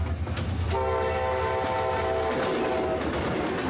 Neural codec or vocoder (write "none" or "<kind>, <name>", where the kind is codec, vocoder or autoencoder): none